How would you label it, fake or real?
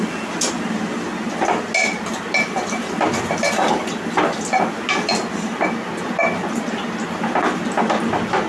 real